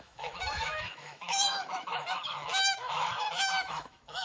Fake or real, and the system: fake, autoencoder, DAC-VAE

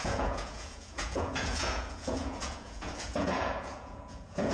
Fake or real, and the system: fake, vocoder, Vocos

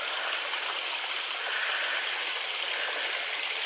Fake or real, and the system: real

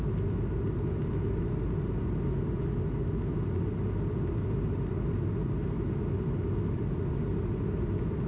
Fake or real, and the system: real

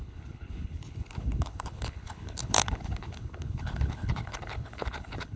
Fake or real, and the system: fake, codec, HILCodec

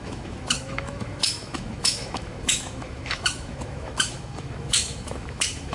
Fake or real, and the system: fake, autoencoder, DAC-VAE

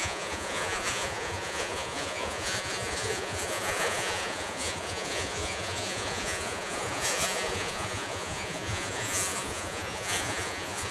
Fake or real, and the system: fake, vocoder, Vocos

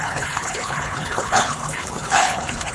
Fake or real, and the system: fake, codec, HILCodec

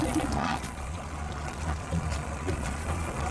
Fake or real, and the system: fake, vocoder, Vocos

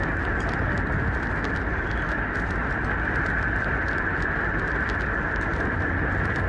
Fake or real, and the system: real